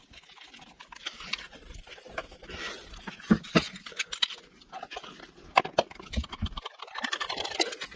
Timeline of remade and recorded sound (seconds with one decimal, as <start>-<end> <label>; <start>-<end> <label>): 0.0-2.2 recorded; 2.2-2.7 remade; 2.7-8.0 recorded